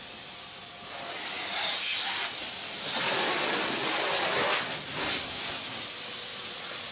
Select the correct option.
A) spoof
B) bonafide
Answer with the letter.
B